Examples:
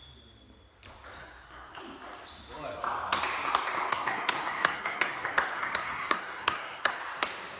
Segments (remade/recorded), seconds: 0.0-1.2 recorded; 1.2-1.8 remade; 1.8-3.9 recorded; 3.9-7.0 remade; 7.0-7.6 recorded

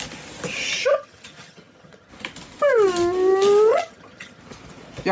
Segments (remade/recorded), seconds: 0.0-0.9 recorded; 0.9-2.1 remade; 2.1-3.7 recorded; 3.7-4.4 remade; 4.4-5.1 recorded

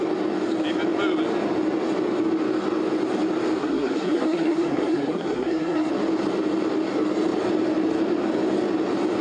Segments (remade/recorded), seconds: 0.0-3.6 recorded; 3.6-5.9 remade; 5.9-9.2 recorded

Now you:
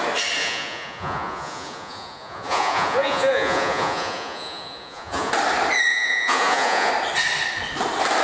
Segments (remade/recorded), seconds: 0.0-0.4 recorded; 0.4-5.3 remade; 5.3-5.9 recorded; 5.9-6.9 remade; 6.9-8.2 recorded